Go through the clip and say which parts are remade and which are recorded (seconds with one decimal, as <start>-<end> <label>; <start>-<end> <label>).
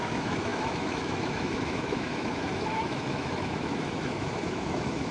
0.0-5.1 remade